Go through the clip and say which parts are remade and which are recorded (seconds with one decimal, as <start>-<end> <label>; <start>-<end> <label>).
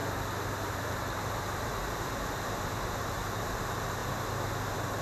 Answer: 0.0-0.7 recorded; 0.7-1.8 remade; 1.8-2.6 recorded; 2.6-4.0 remade; 4.0-5.0 recorded